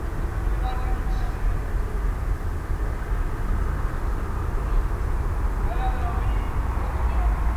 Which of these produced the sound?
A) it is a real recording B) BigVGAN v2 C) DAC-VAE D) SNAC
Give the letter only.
A